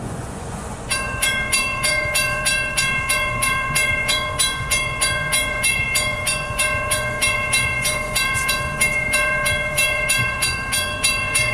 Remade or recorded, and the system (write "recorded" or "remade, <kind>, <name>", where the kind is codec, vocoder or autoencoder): remade, vocoder, Vocos